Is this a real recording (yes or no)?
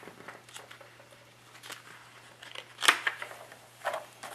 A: yes